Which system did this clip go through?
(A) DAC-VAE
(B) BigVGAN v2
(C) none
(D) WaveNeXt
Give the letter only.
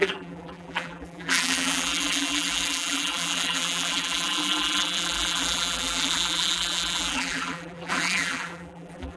B